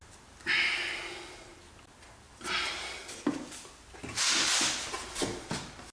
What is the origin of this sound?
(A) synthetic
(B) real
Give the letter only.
B